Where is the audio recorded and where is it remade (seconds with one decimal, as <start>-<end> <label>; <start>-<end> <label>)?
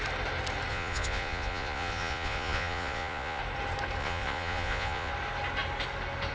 0.0-0.7 recorded; 0.7-3.4 remade; 3.4-4.0 recorded; 4.0-5.1 remade; 5.1-6.3 recorded